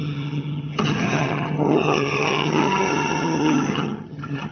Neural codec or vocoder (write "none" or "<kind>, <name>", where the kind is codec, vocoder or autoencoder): vocoder, HiFi-GAN